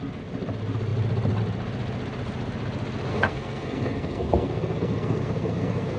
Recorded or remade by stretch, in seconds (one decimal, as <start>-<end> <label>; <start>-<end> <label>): 0.0-3.1 recorded; 3.1-6.0 remade